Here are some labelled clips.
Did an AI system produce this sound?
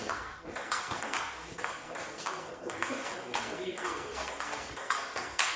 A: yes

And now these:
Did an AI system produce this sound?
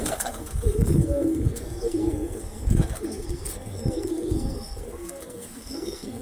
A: yes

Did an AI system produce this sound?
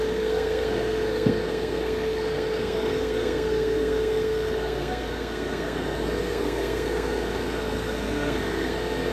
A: yes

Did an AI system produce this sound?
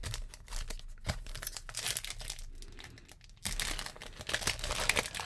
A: no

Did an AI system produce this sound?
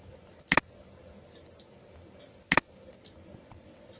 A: no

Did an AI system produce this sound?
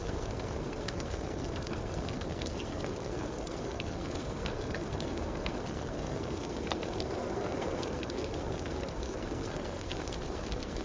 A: yes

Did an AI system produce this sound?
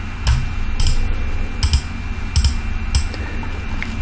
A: no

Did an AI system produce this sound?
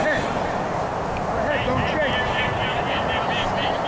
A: no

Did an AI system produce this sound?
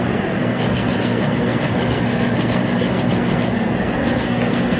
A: yes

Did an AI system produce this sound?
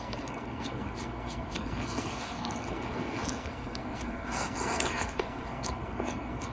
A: yes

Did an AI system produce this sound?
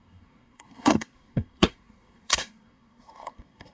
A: yes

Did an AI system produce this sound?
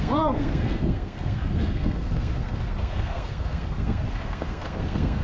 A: yes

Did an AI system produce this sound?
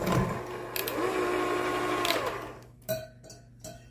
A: no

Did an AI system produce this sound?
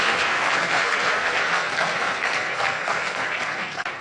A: yes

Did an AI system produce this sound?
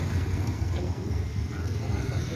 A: yes